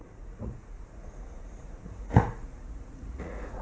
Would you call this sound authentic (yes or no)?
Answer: no